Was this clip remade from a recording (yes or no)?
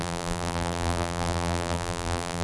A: yes